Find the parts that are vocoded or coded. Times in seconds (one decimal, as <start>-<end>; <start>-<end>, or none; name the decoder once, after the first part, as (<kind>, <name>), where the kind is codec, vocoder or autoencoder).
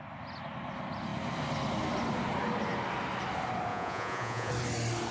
3.7-4.5 (vocoder, Vocos)